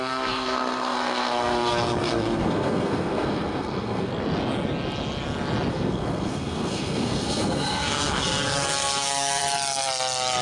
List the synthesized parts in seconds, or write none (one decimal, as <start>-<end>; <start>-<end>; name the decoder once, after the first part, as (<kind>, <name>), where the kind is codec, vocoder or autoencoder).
0.0-4.1 (codec, SNAC); 5.7-9.4